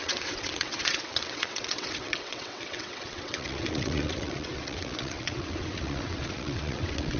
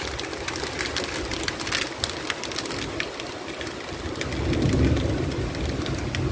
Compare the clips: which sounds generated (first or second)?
first